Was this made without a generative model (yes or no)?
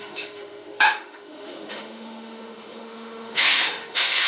no